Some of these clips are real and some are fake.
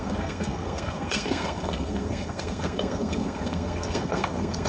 fake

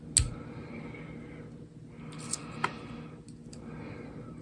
real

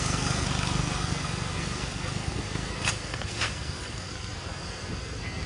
fake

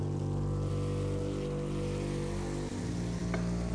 real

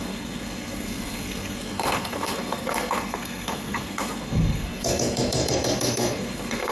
fake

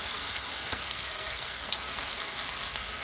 fake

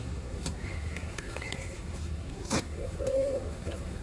fake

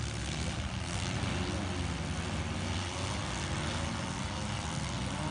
real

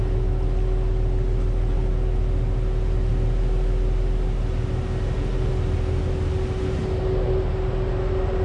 real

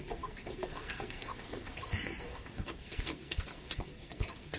fake